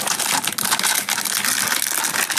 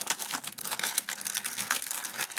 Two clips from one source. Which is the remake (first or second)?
second